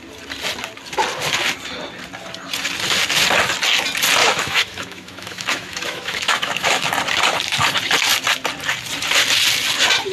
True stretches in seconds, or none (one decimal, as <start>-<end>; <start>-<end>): 0.0-4.2; 6.9-10.1